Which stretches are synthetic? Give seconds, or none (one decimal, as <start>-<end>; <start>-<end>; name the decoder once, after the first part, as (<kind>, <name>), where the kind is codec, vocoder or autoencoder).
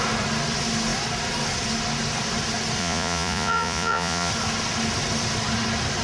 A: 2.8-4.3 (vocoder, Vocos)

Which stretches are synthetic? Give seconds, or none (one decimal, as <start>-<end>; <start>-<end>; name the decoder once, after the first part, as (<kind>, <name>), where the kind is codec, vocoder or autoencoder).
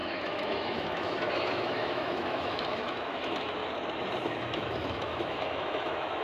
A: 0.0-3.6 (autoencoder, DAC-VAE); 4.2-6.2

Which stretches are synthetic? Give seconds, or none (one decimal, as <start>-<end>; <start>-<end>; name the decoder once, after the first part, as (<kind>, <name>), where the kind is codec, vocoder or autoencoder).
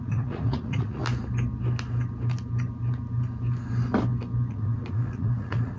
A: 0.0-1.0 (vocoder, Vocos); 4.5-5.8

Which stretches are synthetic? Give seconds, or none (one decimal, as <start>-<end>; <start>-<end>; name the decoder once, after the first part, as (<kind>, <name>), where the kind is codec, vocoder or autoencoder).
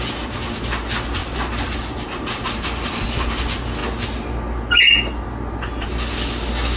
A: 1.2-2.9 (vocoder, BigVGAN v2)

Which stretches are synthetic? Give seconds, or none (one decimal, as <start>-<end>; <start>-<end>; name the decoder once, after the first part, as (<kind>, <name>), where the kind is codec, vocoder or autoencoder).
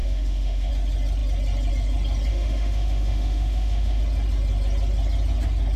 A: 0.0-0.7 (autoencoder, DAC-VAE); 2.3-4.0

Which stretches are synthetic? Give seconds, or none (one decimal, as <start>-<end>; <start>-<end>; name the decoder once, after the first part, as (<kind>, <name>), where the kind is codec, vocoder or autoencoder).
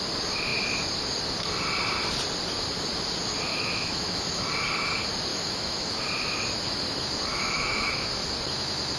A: 3.5-4.5 (autoencoder, DAC-VAE); 5.3-5.9; 7.3-7.9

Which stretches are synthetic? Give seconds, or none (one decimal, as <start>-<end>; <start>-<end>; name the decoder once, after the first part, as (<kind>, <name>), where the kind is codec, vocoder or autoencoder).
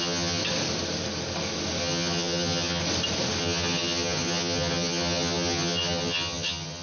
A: 0.0-0.4 (vocoder, HiFi-GAN); 1.8-2.8; 3.4-6.8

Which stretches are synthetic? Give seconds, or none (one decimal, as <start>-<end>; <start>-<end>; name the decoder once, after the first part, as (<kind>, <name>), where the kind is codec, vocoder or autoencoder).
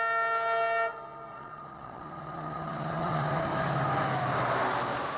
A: 1.3-3.4 (vocoder, Vocos)